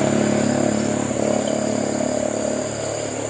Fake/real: real